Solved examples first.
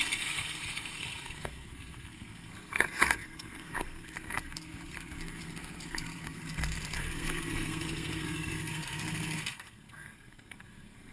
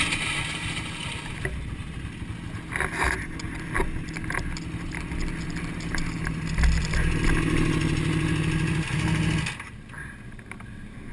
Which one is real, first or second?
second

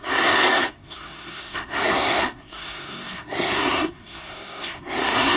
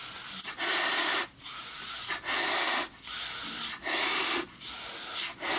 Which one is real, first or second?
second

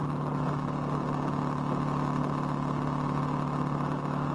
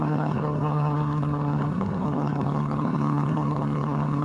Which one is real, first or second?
first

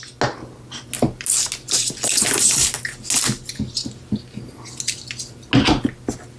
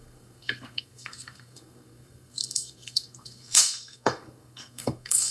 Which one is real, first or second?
first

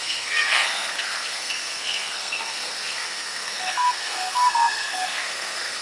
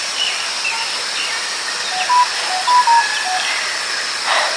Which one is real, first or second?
second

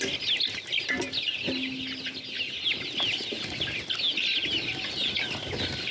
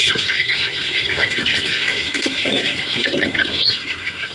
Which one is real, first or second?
first